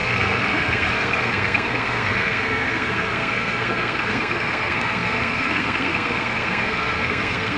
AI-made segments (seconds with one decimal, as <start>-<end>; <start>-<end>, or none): 0.0-7.6